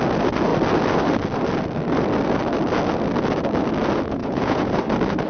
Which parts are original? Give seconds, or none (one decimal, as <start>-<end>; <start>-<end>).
0.0-4.2; 4.7-5.3